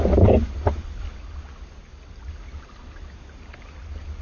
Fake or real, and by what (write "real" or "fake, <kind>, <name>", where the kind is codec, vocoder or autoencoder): real